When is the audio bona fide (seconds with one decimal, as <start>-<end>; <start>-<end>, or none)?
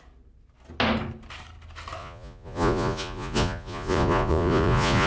0.0-2.0